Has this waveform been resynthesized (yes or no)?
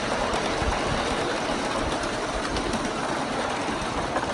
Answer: no